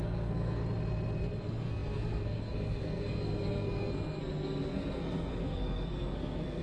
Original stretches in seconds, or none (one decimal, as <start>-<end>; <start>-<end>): 0.6-1.4